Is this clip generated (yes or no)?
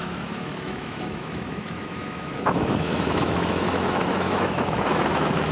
yes